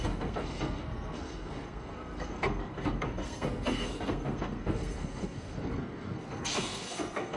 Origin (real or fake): fake